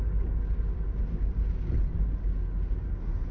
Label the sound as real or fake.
real